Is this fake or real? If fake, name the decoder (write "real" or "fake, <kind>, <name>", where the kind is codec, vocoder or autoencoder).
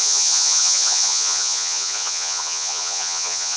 fake, vocoder, Vocos